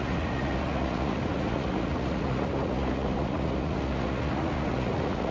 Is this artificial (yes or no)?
yes